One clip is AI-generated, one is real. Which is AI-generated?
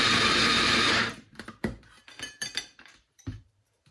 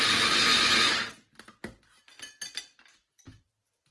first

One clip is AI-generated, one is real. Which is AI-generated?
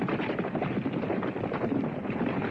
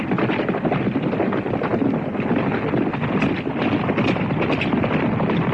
first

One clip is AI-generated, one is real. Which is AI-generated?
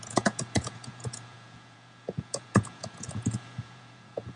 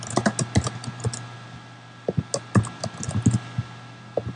first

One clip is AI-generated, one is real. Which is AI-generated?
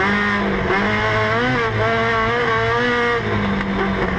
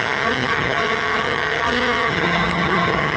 second